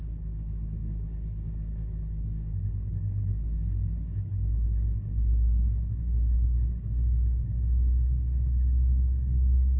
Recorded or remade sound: remade